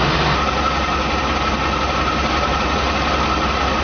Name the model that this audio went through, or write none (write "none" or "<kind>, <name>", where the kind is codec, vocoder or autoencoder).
none